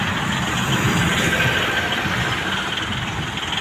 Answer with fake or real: real